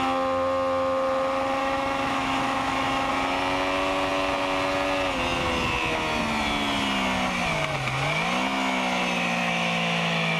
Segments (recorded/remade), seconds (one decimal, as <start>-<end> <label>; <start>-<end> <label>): 0.0-1.6 recorded; 1.6-3.1 remade; 3.1-9.4 recorded; 9.4-10.4 remade